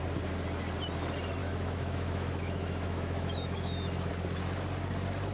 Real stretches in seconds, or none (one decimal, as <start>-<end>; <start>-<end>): 0.0-1.4; 4.1-5.3